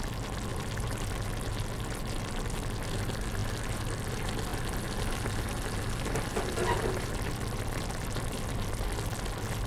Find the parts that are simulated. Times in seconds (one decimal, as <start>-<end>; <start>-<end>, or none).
none